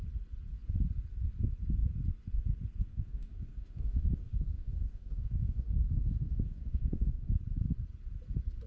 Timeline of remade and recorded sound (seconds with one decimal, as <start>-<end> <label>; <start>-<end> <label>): 0.0-2.9 recorded; 2.9-7.3 remade; 7.3-8.7 recorded